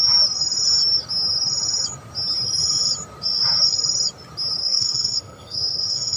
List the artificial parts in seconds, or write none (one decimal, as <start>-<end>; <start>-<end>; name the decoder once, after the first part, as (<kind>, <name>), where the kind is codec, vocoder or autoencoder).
4.6-6.2 (codec, SNAC)